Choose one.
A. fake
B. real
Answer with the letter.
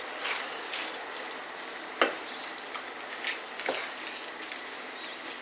B